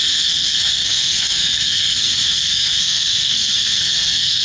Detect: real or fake fake